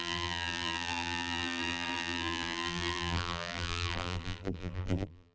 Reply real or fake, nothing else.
fake